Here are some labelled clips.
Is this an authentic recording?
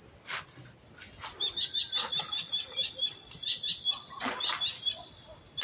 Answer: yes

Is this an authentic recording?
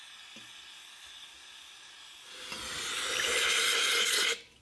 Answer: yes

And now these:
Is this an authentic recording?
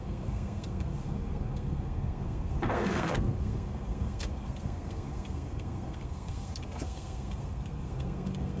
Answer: no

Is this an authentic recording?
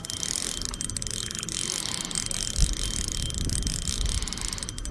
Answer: yes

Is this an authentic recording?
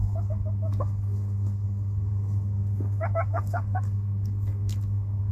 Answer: no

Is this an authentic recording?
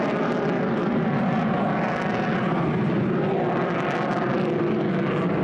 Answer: yes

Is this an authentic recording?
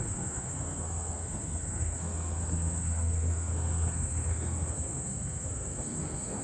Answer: no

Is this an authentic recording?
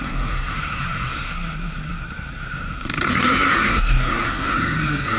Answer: no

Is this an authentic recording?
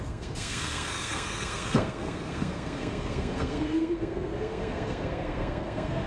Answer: no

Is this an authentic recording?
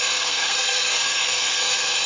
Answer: no